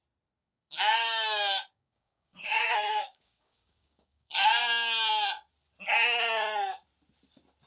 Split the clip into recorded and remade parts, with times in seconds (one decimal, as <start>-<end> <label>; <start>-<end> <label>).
0.0-0.4 recorded; 0.4-4.6 remade; 4.6-7.7 recorded

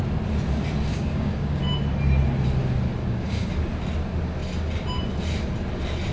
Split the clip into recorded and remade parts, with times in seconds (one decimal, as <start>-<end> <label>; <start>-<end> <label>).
0.0-0.9 recorded; 0.9-1.6 remade; 1.6-3.0 recorded; 3.0-3.5 remade; 3.5-6.1 recorded